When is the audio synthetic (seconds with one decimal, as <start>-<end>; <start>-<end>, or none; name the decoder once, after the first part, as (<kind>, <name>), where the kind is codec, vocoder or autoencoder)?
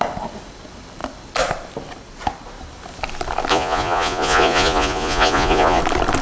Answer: 3.5-5.8 (vocoder, Vocos)